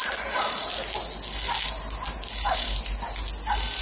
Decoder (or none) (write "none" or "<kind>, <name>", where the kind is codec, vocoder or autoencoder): none